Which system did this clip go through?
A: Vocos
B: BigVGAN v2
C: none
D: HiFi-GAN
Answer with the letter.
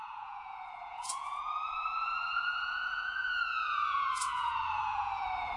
A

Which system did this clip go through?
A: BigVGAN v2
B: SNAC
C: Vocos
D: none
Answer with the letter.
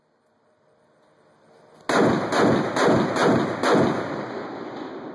D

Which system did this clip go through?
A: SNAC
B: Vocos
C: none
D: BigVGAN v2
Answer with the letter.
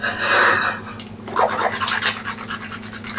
C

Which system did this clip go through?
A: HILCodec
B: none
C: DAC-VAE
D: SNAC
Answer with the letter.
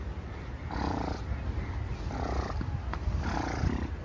B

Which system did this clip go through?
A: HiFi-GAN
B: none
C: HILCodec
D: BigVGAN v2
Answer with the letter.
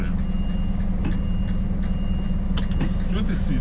B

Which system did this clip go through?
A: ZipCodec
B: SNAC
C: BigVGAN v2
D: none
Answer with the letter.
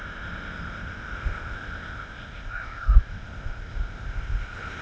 A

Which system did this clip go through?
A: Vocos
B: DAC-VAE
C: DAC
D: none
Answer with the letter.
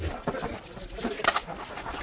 D